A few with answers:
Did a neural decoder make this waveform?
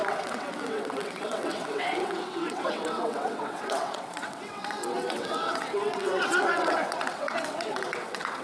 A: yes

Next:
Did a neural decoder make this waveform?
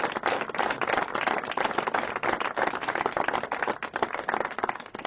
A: no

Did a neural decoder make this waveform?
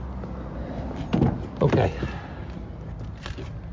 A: no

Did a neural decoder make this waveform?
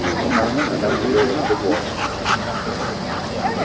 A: no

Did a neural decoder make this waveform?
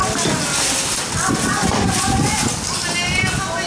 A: no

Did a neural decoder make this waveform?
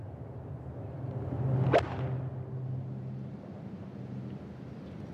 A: no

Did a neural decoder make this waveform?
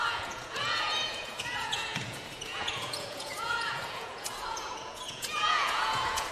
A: yes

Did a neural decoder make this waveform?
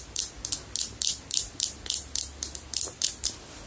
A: no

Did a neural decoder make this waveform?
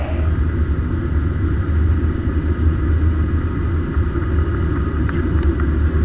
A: no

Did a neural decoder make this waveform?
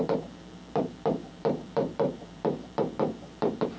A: yes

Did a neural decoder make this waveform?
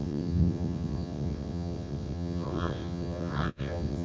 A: yes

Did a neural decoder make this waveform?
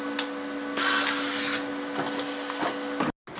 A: no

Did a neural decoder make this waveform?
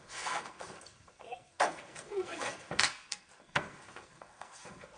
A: yes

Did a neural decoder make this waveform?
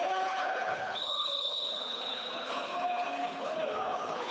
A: yes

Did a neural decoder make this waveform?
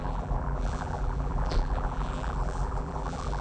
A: yes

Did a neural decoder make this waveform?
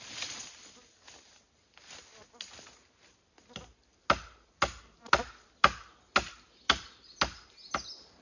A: no